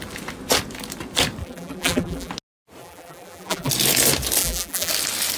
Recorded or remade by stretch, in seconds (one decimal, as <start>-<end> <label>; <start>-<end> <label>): 0.0-1.4 recorded; 1.4-2.3 remade; 2.3-2.8 recorded; 2.8-3.7 remade; 3.7-4.4 recorded; 4.4-4.9 remade; 4.9-5.4 recorded